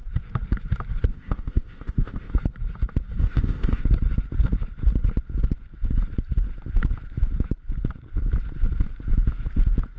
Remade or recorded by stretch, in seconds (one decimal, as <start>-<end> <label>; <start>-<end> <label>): 0.0-1.1 recorded; 1.1-2.3 remade; 2.3-3.2 recorded; 3.2-3.8 remade; 3.8-10.0 recorded